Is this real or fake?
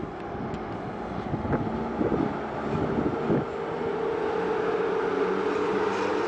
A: real